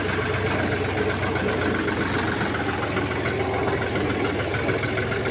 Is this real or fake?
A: real